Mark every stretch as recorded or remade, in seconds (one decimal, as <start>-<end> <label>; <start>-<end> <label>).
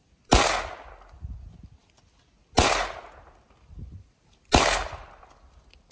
0.0-5.9 recorded